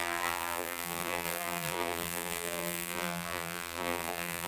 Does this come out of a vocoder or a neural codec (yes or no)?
yes